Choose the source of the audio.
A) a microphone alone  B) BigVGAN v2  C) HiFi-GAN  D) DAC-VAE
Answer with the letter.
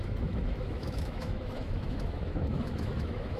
D